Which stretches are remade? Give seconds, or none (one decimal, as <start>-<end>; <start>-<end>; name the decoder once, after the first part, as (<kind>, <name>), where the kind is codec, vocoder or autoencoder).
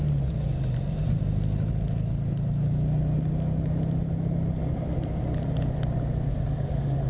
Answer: 6.3-7.1 (codec, DAC)